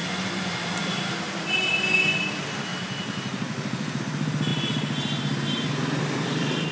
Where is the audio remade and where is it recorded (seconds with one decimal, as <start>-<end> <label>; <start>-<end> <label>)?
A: 0.0-2.2 recorded; 2.2-2.7 remade; 2.7-4.0 recorded; 4.0-4.5 remade; 4.5-6.0 recorded; 6.0-6.7 remade